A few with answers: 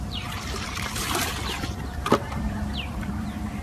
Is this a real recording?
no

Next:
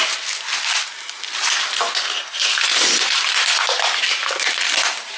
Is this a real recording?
yes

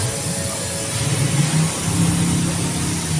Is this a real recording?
yes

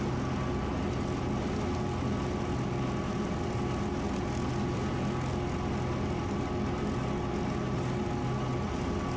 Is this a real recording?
yes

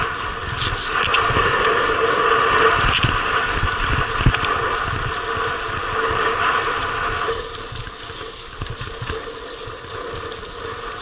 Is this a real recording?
yes